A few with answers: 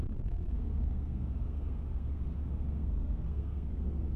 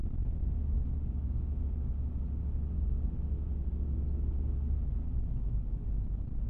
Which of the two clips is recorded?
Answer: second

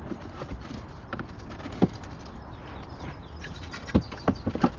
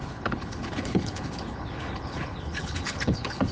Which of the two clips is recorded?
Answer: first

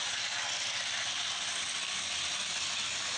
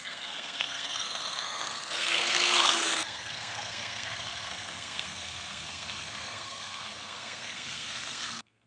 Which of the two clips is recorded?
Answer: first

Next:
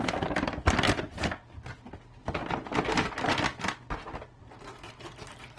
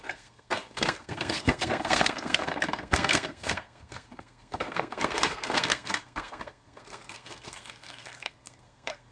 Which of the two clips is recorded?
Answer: first